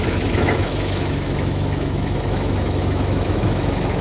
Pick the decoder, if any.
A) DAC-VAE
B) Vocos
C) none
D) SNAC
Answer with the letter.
A